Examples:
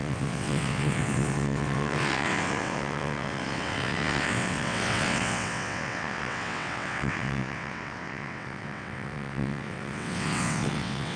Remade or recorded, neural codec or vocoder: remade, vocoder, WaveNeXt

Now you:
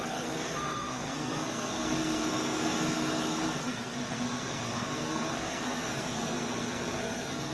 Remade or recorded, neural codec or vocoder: remade, codec, SNAC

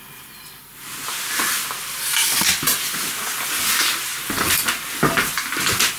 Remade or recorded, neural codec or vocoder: recorded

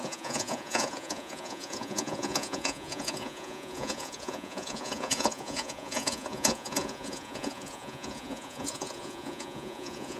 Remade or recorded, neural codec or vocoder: remade, vocoder, Vocos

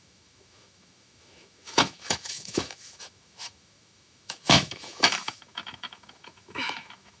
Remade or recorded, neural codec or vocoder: remade, autoencoder, DAC-VAE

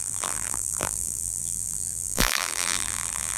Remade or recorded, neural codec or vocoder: remade, vocoder, BigVGAN v2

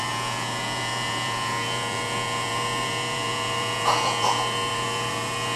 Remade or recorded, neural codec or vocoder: remade, vocoder, Vocos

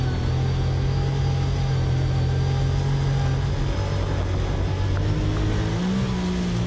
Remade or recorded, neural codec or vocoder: recorded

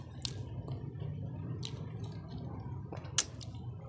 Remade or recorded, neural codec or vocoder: recorded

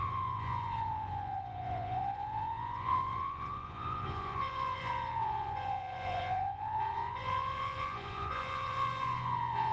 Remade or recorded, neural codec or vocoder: remade, vocoder, Vocos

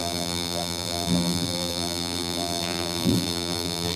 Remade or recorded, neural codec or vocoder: remade, vocoder, BigVGAN v2